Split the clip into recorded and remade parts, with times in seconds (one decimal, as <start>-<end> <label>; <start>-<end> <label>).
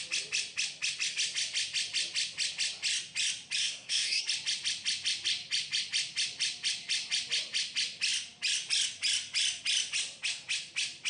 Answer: 0.0-3.6 recorded; 3.6-4.2 remade; 4.2-11.1 recorded